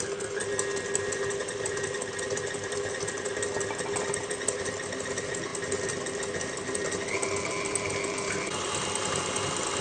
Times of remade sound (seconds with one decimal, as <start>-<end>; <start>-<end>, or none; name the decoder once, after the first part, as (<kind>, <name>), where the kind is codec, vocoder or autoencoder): none